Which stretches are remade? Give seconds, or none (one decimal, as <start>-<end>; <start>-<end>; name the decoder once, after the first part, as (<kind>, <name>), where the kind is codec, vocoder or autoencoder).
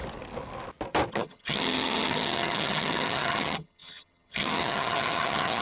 1.1-5.6 (vocoder, HiFi-GAN)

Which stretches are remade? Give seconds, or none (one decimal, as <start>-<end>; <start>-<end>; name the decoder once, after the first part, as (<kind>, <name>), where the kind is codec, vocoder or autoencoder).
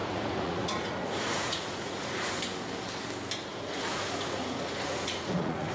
0.0-2.4 (vocoder, Vocos); 3.5-5.7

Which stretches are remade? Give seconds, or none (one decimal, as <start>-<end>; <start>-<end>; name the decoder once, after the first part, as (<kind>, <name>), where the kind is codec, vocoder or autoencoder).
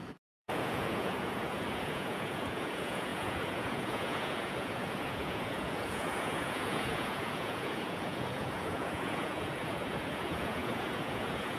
0.0-11.6 (vocoder, Vocos)